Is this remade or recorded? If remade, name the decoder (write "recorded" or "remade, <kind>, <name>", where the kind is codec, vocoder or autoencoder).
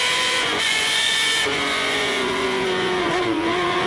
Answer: remade, vocoder, Vocos